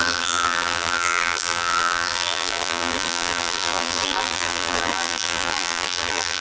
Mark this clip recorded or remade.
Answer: remade